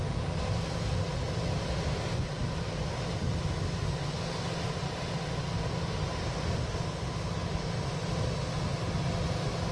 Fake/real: real